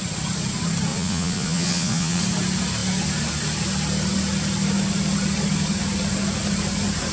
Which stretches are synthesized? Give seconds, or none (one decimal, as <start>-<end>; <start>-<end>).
0.9-2.2